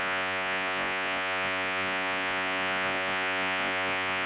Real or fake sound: fake